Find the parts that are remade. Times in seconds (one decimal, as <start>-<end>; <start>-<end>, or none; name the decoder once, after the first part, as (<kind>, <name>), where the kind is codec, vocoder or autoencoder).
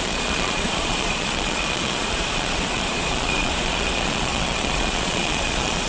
0.0-5.9 (vocoder, Vocos)